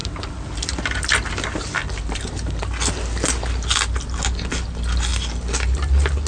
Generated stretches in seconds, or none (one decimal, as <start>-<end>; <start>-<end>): none